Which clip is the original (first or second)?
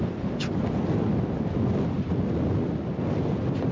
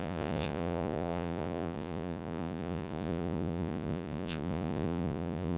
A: first